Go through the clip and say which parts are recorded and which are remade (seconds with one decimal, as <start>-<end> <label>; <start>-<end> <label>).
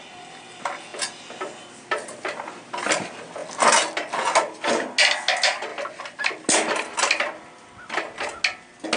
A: 0.0-9.0 recorded